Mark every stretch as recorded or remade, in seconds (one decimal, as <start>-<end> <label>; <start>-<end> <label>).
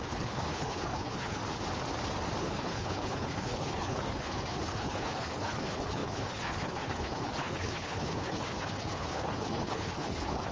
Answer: 0.0-1.4 remade; 1.4-2.4 recorded; 2.4-10.5 remade